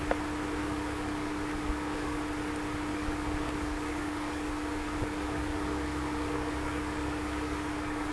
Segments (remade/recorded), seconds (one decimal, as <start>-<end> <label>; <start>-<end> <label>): 0.0-0.6 recorded; 0.6-2.2 remade; 2.2-2.9 recorded; 2.9-8.1 remade